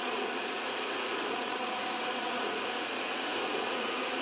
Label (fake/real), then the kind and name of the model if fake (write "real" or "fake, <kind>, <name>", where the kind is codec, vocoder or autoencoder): fake, vocoder, Vocos